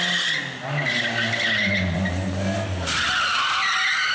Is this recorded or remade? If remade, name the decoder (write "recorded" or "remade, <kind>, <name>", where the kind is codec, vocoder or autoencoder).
recorded